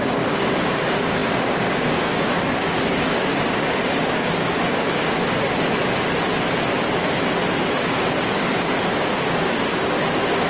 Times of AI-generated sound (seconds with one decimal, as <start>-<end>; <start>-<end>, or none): 0.0-5.5; 7.6-10.5